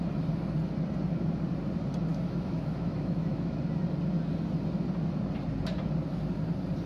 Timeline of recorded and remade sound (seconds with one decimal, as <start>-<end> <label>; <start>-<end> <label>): 0.0-2.1 recorded; 2.1-3.6 remade; 3.6-6.9 recorded